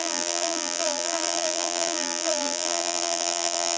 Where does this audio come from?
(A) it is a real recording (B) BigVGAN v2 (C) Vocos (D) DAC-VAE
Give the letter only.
B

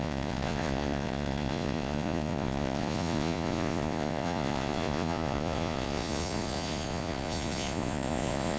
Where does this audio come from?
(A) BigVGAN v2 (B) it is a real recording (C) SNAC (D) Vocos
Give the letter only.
D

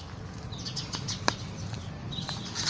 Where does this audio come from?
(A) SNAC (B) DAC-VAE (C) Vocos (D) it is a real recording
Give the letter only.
D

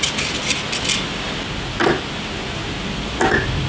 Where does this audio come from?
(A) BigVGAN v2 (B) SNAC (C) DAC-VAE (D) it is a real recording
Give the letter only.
D